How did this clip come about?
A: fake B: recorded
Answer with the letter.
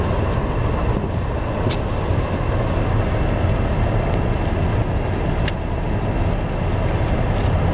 B